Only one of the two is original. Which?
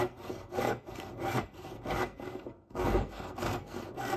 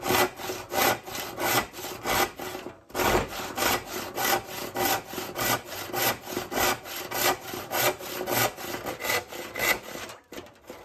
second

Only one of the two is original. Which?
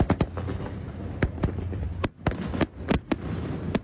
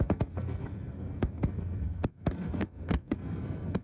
first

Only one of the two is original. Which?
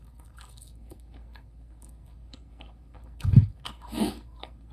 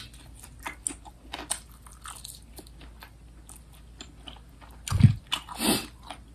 second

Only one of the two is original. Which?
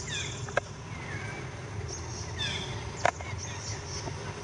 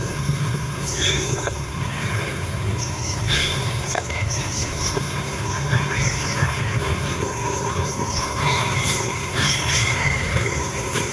first